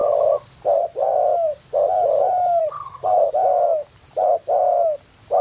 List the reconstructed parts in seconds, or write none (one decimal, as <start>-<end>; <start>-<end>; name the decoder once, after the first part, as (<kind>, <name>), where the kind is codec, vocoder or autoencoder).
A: 2.6-3.3 (codec, HILCodec)